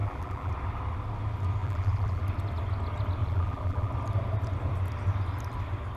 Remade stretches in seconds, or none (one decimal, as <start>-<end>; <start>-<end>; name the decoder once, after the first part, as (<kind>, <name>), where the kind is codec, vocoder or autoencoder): 0.0-0.5 (vocoder, BigVGAN v2); 1.6-2.2; 3.2-3.9